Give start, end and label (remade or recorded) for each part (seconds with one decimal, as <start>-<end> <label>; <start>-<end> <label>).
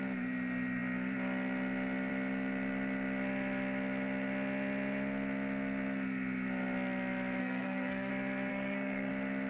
0.0-7.4 recorded; 7.4-8.1 remade; 8.1-8.5 recorded; 8.5-9.1 remade; 9.1-9.5 recorded